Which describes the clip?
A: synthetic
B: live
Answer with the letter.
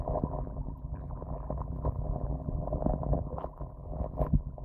A